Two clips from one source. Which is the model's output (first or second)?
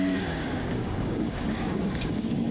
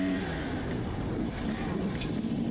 first